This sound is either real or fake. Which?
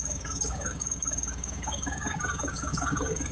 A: fake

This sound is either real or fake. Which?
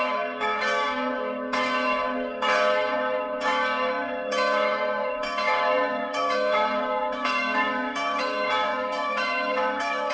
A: fake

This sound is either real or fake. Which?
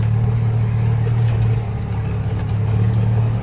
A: fake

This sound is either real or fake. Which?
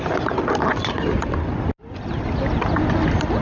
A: real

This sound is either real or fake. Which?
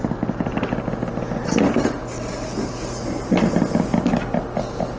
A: real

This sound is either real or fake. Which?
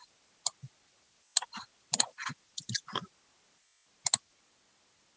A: real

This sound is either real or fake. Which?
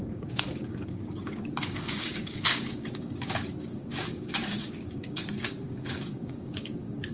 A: fake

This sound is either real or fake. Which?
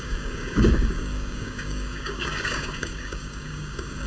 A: fake